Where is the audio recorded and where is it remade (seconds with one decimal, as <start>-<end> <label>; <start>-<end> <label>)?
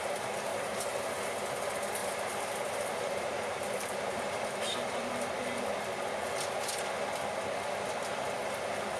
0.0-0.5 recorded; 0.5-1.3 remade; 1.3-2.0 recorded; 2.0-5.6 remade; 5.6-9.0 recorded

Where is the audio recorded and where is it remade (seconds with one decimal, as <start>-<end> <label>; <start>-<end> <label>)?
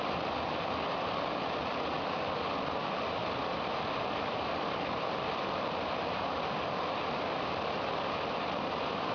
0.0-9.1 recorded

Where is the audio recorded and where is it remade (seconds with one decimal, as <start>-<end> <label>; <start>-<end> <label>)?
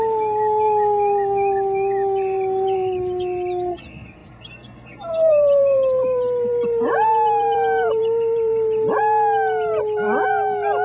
0.0-4.2 recorded; 4.2-9.0 remade; 9.0-10.8 recorded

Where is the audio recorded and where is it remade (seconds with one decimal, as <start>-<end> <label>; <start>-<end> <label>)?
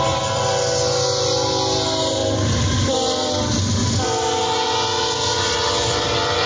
0.0-6.5 recorded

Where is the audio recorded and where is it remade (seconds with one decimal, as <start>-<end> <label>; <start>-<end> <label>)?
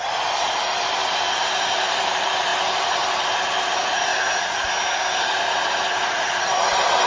0.0-4.1 remade; 4.1-6.2 recorded; 6.2-7.1 remade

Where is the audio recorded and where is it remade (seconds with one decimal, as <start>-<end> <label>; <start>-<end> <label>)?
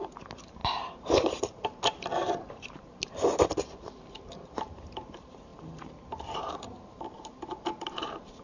0.0-8.4 remade